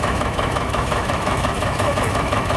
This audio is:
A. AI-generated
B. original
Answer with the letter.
A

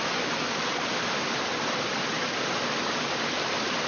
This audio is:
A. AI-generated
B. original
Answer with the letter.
B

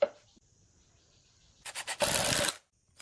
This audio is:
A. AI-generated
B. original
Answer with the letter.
B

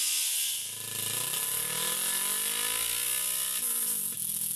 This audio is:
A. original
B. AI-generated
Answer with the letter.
A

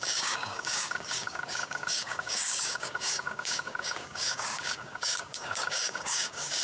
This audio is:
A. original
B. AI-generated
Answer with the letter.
B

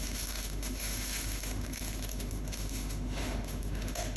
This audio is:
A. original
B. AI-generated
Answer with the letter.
B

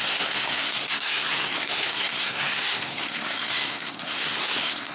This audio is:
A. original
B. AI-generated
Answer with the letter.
B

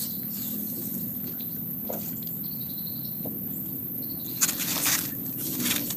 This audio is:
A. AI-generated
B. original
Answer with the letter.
A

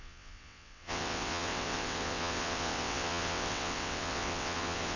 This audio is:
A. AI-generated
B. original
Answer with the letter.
A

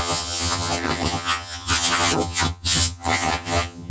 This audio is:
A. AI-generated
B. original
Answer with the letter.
A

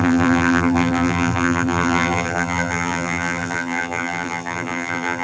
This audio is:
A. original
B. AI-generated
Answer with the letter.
B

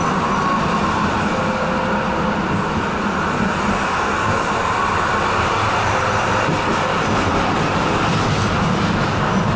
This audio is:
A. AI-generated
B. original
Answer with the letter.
B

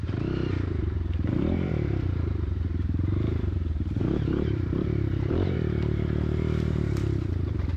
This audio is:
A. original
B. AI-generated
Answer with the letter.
B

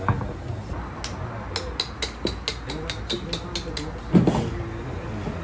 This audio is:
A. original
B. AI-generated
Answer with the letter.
A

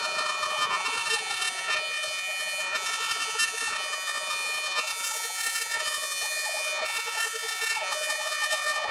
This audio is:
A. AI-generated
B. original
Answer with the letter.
A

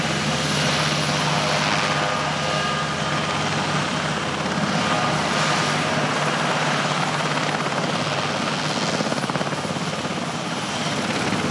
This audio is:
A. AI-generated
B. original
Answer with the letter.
B